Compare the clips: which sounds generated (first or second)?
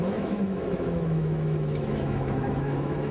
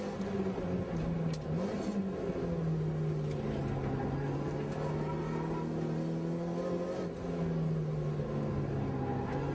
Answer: first